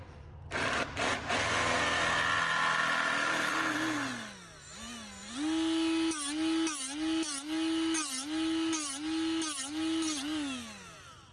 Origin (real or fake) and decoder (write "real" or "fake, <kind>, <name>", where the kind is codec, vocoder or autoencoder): real